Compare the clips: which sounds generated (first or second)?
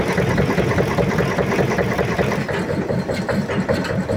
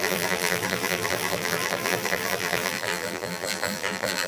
second